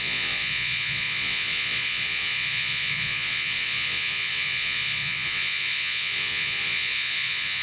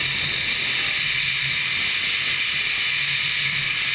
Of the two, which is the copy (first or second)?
first